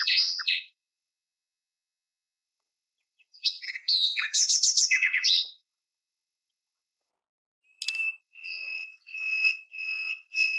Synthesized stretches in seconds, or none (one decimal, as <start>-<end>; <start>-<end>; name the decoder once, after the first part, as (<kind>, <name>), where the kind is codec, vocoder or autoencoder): 0.0-7.1 (vocoder, WaveNeXt); 8.2-10.6